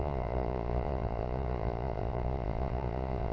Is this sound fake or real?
fake